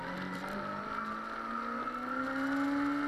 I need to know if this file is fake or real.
real